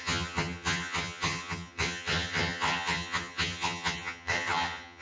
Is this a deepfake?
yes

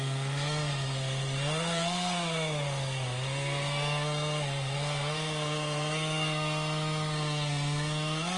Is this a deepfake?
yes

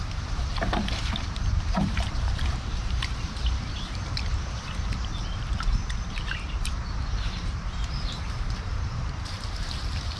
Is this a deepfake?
yes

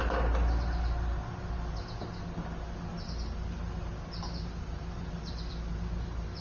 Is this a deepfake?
no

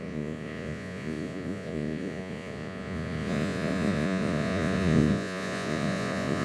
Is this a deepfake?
yes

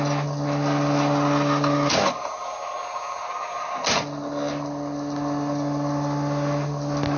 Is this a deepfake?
no